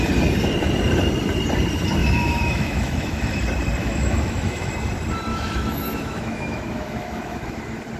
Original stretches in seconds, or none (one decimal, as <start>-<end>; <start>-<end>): 0.0-2.0; 3.4-3.8; 4.7-5.3; 7.6-8.0